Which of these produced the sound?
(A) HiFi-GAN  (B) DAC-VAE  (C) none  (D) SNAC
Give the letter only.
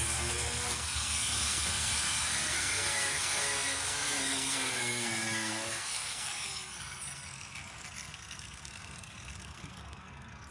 D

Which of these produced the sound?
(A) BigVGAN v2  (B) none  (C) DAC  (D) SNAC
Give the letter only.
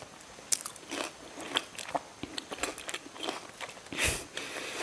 B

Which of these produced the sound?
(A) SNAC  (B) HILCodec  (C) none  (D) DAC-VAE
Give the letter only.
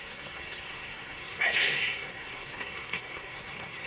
A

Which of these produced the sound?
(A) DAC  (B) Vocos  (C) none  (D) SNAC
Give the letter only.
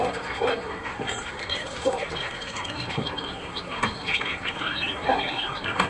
D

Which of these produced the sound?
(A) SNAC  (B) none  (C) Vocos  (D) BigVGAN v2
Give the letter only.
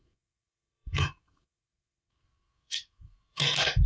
A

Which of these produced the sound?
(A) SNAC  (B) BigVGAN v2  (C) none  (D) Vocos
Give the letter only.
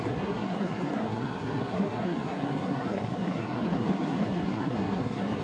A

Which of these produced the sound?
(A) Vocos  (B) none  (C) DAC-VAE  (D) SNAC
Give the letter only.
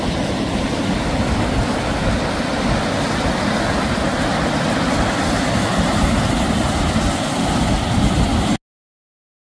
B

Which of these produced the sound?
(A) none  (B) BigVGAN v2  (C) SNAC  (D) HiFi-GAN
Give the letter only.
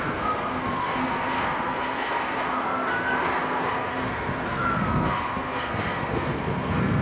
C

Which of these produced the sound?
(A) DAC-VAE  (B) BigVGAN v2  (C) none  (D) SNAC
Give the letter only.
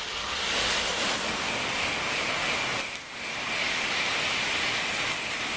C